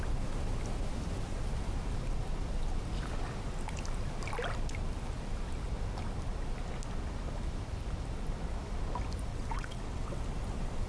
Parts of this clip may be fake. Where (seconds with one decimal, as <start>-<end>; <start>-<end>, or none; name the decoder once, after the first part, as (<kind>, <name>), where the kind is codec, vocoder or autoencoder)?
9.3-10.2 (vocoder, WaveNeXt)